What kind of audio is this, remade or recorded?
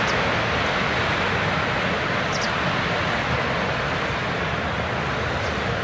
recorded